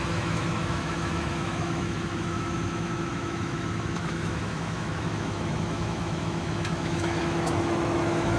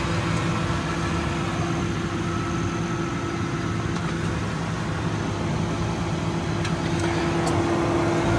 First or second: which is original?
second